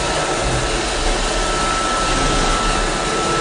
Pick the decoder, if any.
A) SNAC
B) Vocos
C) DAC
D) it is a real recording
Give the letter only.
D